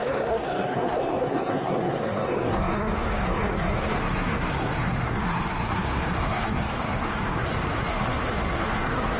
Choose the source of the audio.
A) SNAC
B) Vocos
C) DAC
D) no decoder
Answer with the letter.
A